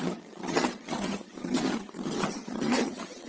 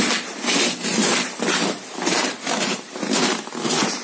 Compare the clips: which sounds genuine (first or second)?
second